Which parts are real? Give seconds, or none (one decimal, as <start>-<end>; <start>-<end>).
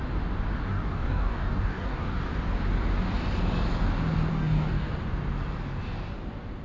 0.0-0.7; 2.2-4.3; 4.9-6.6